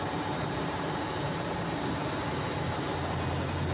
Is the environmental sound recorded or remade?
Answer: recorded